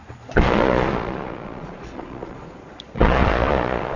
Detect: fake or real fake